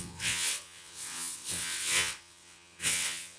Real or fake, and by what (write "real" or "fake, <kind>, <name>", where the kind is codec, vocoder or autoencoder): fake, vocoder, WaveNeXt